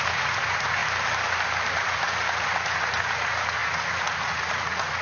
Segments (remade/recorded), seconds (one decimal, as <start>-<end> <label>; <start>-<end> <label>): 0.0-0.8 remade; 0.8-1.7 recorded; 1.7-5.0 remade